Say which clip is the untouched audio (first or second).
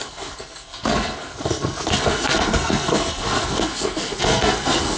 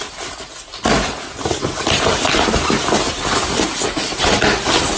second